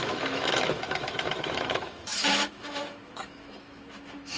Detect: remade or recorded remade